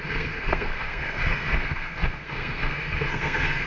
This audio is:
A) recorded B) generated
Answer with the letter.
B